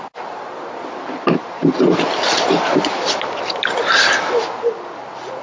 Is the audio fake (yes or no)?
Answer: no